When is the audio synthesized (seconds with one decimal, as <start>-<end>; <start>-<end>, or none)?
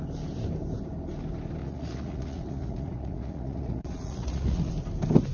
1.6-4.7